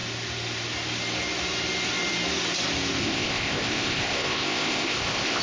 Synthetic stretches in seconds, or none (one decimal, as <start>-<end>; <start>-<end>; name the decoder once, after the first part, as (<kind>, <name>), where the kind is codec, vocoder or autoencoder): 3.0-5.4 (codec, ZipCodec)